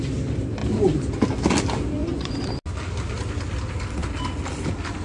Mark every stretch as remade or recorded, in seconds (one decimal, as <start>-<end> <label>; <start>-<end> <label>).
0.0-2.0 recorded; 2.0-2.5 remade; 2.5-5.0 recorded